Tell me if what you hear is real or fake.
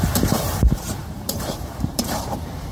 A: fake